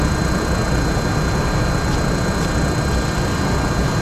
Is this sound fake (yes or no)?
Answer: no